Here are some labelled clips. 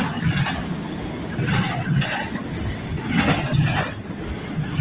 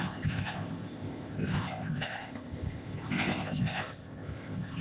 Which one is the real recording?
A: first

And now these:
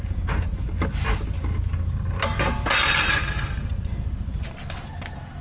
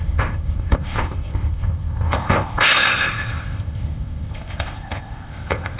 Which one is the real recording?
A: first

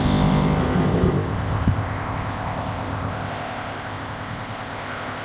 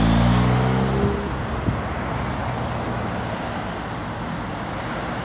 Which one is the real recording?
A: second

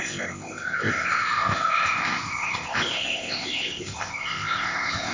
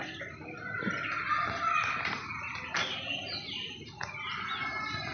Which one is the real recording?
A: second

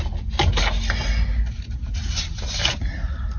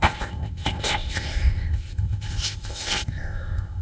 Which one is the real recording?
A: first